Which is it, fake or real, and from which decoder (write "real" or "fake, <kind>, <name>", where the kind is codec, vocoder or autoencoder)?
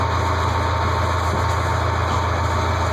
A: real